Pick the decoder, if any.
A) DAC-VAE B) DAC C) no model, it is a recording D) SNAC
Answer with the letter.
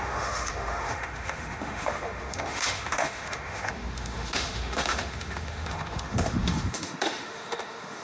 A